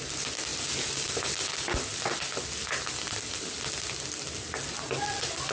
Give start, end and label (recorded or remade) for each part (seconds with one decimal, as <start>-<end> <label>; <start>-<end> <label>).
0.0-5.5 recorded